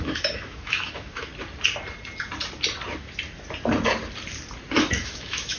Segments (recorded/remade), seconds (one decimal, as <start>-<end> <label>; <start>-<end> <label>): 0.0-1.3 remade; 1.3-4.7 recorded; 4.7-5.6 remade